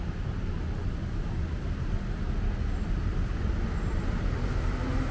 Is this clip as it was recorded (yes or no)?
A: yes